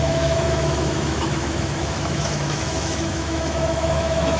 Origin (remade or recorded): remade